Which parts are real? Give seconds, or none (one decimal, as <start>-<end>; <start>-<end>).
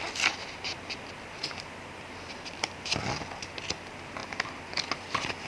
0.0-5.5